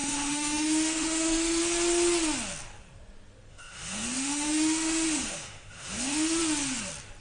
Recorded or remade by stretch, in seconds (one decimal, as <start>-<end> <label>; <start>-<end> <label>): 0.0-1.6 remade; 1.6-3.5 recorded; 3.5-6.4 remade; 6.4-7.2 recorded